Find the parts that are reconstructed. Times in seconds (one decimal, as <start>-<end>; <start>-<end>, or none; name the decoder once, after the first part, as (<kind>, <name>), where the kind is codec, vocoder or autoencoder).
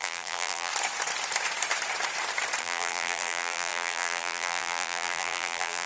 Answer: 0.0-0.7 (vocoder, BigVGAN v2); 2.6-5.9